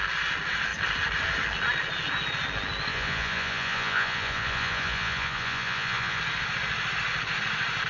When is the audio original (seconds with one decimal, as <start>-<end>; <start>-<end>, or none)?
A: 0.0-2.9; 6.2-7.9